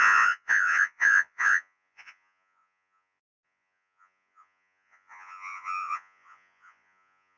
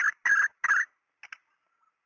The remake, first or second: first